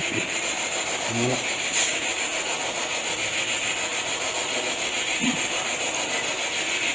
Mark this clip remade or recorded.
recorded